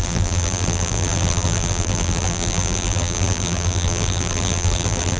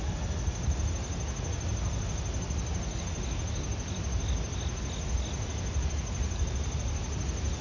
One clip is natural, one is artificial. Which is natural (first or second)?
second